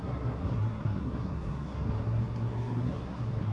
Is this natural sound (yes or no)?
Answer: no